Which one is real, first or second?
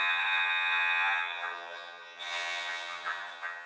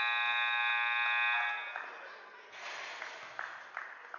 second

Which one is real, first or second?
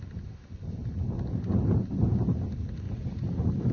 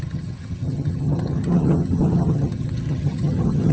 first